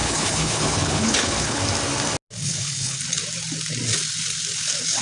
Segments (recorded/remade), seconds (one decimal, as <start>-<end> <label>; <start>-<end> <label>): 0.0-1.6 remade; 1.6-2.4 recorded; 2.4-3.0 remade; 3.0-5.0 recorded